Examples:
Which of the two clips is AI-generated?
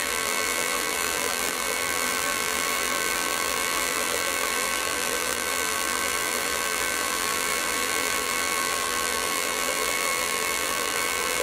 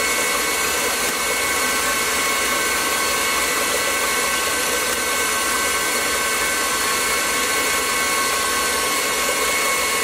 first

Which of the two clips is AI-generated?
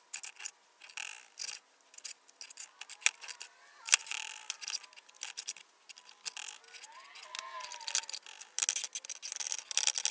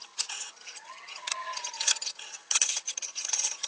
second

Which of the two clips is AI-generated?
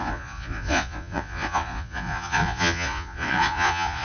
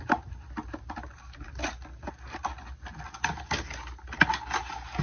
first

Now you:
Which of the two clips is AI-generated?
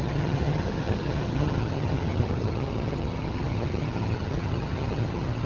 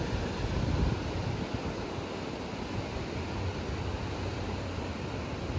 first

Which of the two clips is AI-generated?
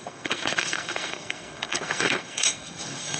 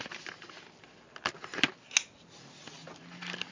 first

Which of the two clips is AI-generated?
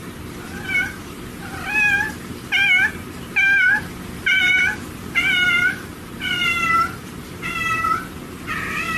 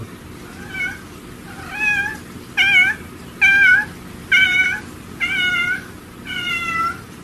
first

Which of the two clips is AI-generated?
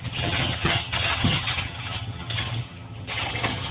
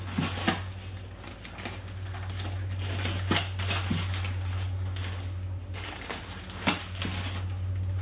first